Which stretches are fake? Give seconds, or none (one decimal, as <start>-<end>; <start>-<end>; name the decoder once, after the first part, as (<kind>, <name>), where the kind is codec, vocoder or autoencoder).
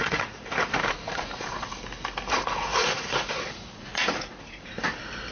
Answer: 0.0-1.7 (vocoder, Vocos); 2.3-4.8